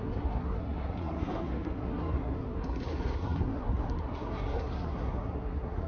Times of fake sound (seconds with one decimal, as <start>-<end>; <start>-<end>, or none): 0.0-5.9